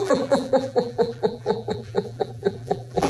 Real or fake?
fake